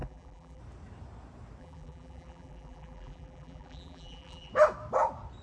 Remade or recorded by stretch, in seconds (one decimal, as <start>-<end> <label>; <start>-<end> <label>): 0.0-0.6 remade; 0.6-1.6 recorded; 1.6-4.5 remade; 4.5-5.4 recorded